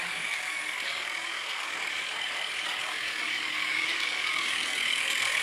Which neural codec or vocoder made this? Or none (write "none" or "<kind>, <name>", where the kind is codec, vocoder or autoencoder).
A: codec, DAC